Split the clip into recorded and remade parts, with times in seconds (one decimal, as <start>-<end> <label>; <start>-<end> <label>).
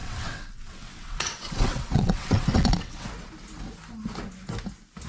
0.0-3.1 remade; 3.1-5.1 recorded